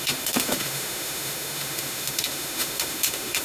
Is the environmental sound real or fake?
fake